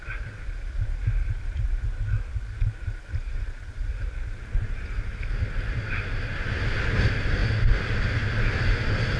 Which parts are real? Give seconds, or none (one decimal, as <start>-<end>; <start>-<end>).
0.0-9.2